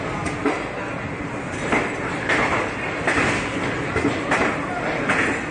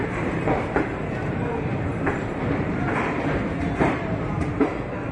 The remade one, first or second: second